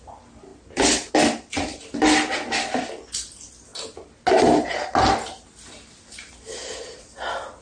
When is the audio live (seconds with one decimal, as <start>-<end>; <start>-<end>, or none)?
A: 0.0-7.6